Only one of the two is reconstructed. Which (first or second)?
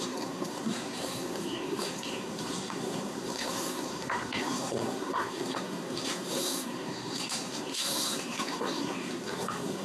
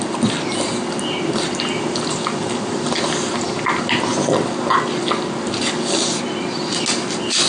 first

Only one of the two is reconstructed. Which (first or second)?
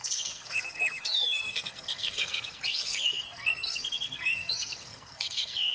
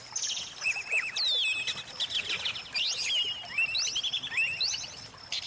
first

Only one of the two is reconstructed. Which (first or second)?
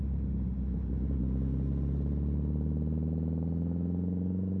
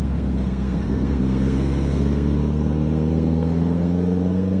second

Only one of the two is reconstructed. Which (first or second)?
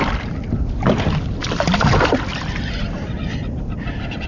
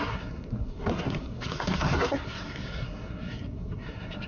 second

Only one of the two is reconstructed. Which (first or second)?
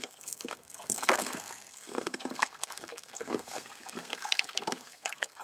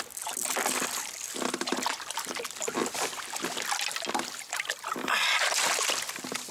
first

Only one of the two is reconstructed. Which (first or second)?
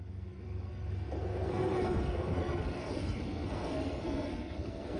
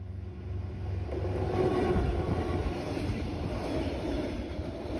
first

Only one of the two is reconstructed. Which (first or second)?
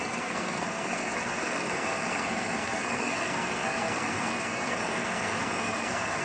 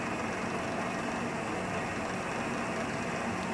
first